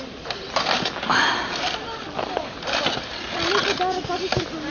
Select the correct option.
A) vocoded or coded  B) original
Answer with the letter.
B